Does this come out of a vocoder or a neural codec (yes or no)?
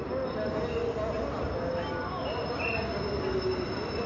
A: no